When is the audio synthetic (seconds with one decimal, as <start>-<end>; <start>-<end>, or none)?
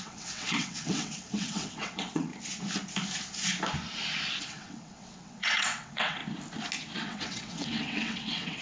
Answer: 0.0-2.3; 4.4-6.2; 7.0-8.6